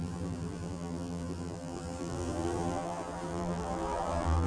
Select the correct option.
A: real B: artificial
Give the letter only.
B